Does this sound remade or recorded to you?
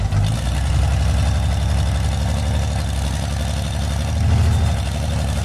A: recorded